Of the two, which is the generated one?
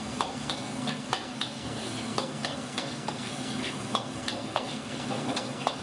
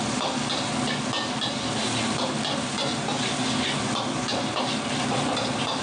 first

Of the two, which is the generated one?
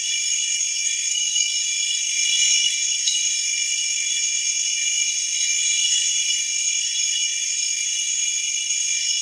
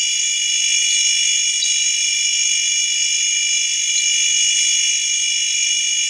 first